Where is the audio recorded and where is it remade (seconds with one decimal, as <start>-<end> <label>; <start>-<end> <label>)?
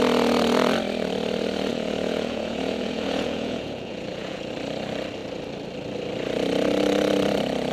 0.0-1.7 recorded; 1.7-4.5 remade; 4.5-7.7 recorded